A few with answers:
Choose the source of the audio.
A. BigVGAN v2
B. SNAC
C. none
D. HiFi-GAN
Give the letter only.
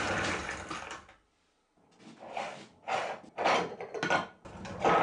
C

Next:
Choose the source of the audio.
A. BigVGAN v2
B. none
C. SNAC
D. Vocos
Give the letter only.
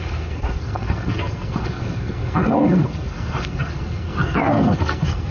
C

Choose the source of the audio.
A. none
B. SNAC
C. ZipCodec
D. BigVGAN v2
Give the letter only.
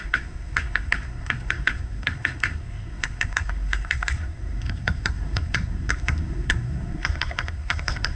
B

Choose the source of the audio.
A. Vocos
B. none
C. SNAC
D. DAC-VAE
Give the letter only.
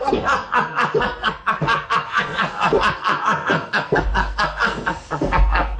C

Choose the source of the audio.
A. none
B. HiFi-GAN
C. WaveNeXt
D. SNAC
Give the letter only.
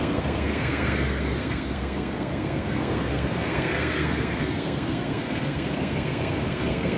D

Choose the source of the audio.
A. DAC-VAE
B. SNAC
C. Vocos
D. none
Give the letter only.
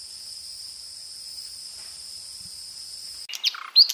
D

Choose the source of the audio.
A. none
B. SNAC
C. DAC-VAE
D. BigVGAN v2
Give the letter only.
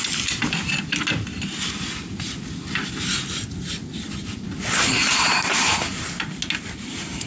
A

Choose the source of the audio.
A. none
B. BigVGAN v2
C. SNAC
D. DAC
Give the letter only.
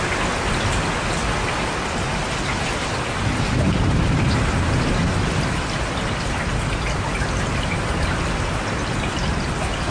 A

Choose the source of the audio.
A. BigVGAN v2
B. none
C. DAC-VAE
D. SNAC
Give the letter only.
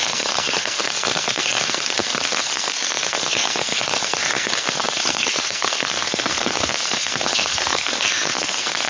D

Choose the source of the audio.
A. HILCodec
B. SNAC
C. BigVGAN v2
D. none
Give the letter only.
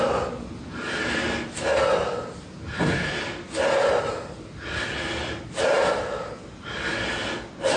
D